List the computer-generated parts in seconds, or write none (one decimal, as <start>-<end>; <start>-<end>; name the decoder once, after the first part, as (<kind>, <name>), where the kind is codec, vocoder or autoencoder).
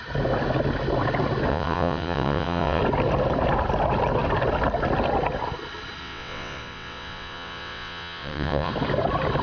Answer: 1.5-2.8 (vocoder, WaveNeXt); 6.0-8.7